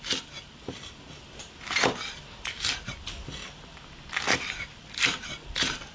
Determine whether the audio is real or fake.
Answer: real